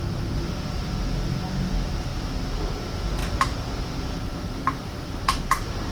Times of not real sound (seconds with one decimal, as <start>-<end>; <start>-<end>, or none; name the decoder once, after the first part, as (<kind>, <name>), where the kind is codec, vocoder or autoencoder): 3.2-3.8 (vocoder, BigVGAN v2); 4.3-5.9